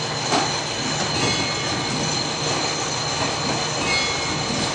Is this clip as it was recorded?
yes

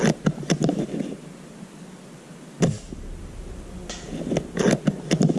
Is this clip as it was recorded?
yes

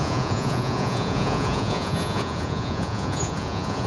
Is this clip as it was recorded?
no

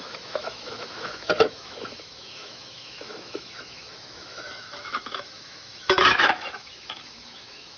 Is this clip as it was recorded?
no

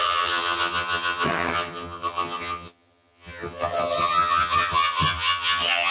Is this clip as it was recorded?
no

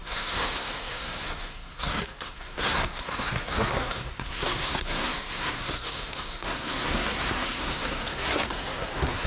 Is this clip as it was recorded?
no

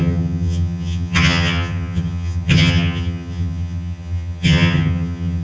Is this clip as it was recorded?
no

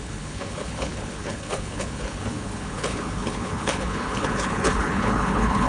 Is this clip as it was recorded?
no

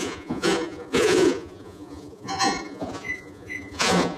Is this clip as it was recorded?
no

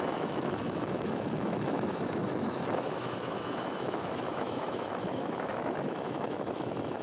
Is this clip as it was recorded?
no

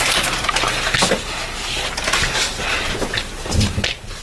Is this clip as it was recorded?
yes